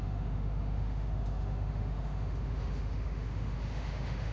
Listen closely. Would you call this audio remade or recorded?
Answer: remade